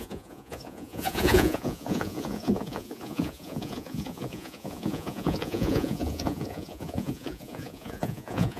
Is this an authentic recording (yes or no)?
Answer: no